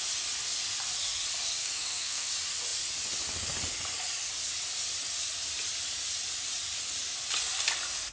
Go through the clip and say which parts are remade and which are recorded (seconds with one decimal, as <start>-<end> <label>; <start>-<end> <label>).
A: 0.0-1.6 recorded; 1.6-2.3 remade; 2.3-8.1 recorded